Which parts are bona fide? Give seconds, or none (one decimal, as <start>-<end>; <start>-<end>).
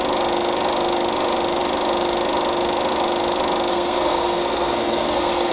0.0-3.7